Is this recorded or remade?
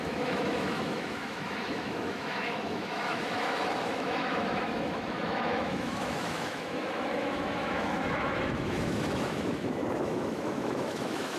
remade